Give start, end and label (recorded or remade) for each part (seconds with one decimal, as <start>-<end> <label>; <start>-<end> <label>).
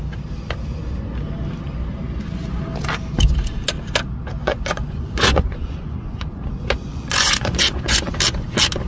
0.0-4.3 recorded; 4.3-6.5 remade; 6.5-6.9 recorded; 6.9-8.1 remade; 8.1-8.9 recorded